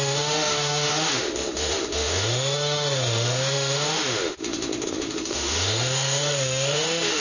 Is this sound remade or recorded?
remade